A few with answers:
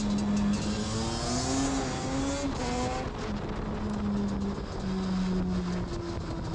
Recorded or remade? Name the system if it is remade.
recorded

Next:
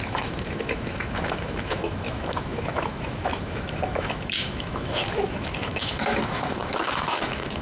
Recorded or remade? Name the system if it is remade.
remade, autoencoder, DAC-VAE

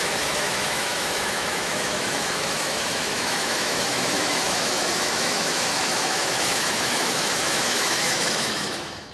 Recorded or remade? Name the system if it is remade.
remade, autoencoder, DAC-VAE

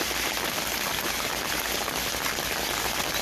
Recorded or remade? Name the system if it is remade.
recorded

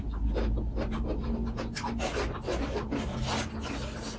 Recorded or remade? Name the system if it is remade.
recorded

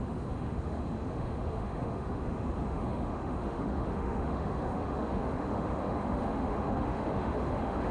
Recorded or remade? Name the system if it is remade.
remade, autoencoder, DAC-VAE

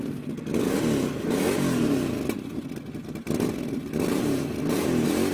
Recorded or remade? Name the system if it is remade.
recorded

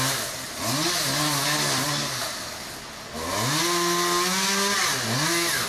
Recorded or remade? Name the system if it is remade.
recorded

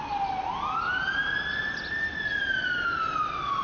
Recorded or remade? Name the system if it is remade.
recorded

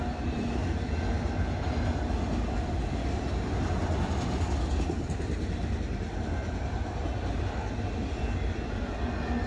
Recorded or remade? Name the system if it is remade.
recorded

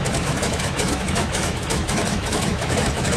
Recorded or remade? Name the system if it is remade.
remade, autoencoder, DAC-VAE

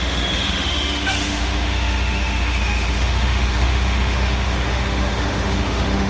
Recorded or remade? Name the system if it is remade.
remade, autoencoder, DAC-VAE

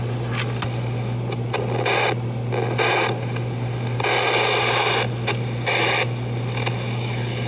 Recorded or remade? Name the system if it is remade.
recorded